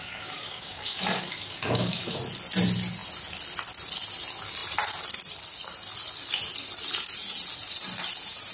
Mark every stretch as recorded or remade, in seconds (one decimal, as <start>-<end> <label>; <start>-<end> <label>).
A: 0.0-2.1 remade; 2.1-8.5 recorded